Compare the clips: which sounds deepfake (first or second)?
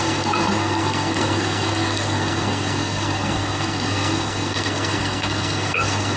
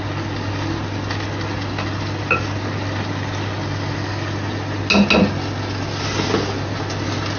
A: first